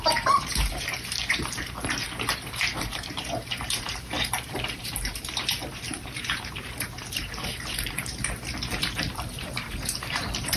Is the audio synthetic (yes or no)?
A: yes